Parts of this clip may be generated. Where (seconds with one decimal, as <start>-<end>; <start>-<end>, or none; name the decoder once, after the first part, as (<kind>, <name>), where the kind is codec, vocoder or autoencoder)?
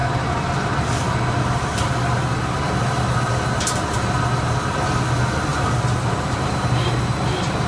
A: 5.5-6.9 (vocoder, BigVGAN v2)